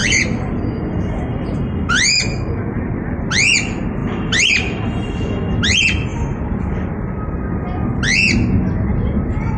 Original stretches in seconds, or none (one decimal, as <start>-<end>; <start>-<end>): 0.6-1.3; 2.8-4.0; 5.1-9.6